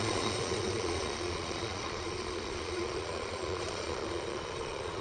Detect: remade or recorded remade